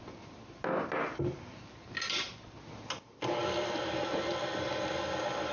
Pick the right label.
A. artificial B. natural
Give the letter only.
B